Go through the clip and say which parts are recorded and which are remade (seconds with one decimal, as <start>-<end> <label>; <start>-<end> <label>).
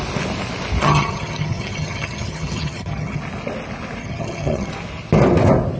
0.0-0.8 recorded; 0.8-3.2 remade; 3.2-4.0 recorded; 4.0-4.7 remade; 4.7-5.8 recorded